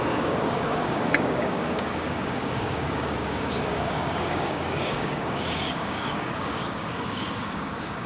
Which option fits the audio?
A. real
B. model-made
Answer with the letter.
B